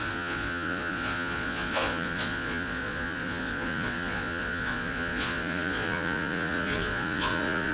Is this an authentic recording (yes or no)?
no